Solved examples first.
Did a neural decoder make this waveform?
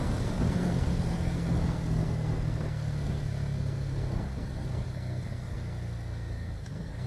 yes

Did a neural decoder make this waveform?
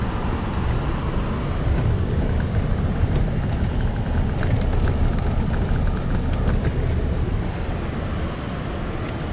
no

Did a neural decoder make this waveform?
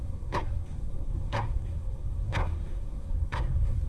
yes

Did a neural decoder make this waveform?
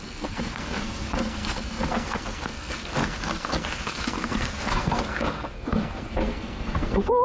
yes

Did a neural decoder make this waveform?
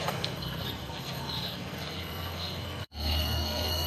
yes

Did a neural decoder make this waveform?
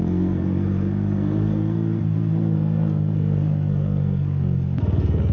yes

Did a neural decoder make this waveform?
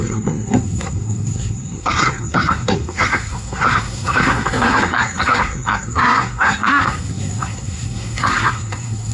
yes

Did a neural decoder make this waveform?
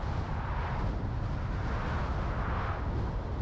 no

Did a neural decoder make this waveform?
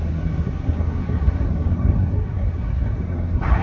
yes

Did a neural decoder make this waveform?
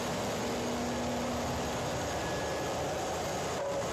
no